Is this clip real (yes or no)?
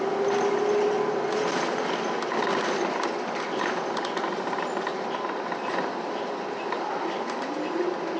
yes